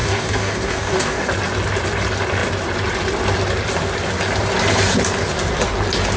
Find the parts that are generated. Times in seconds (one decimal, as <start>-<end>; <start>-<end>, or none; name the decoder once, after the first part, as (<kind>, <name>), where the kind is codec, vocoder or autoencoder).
0.0-1.3 (codec, DAC)